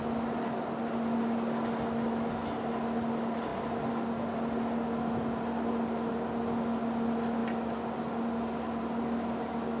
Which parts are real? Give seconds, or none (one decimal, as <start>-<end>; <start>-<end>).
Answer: 0.0-9.8